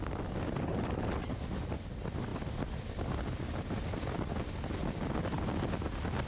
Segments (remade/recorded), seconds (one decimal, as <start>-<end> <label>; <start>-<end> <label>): 0.0-6.3 recorded